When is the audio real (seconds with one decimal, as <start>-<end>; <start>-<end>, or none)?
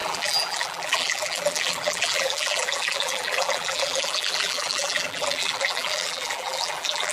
none